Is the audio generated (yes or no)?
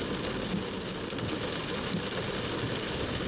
no